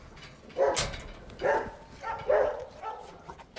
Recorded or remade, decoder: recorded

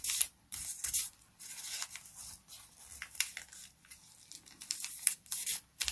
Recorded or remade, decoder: remade, vocoder, BigVGAN v2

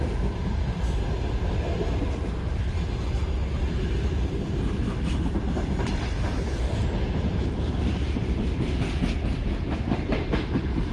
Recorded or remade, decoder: remade, vocoder, BigVGAN v2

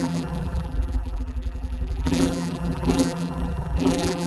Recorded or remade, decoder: remade, vocoder, BigVGAN v2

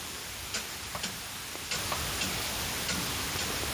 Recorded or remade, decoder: recorded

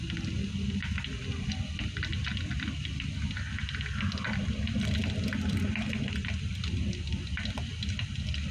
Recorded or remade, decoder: recorded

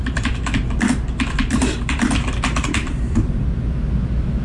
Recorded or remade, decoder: remade, vocoder, BigVGAN v2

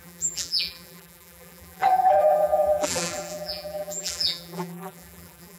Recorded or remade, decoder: remade, vocoder, BigVGAN v2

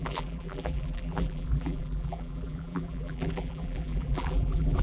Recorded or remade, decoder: remade, vocoder, BigVGAN v2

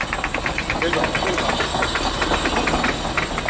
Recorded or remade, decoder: recorded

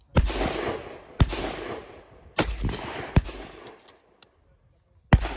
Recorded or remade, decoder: recorded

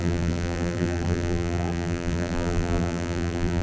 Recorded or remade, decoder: remade, vocoder, BigVGAN v2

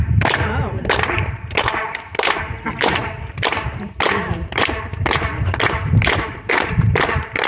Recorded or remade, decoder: remade, vocoder, BigVGAN v2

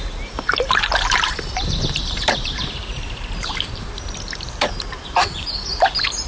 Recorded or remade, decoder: remade, vocoder, BigVGAN v2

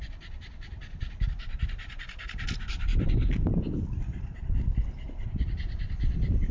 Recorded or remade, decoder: remade, vocoder, BigVGAN v2